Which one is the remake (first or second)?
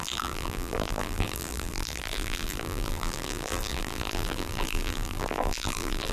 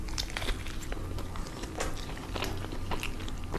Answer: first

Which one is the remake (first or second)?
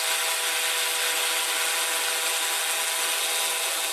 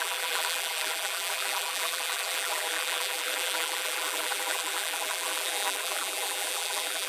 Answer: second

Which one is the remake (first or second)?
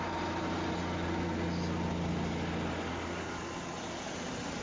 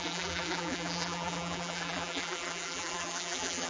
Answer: second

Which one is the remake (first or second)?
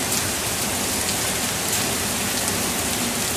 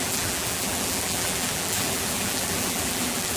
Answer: second